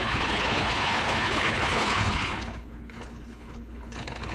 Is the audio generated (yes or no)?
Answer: yes